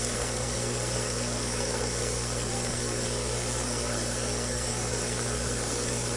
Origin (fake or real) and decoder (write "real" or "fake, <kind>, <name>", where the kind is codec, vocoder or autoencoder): fake, codec, SNAC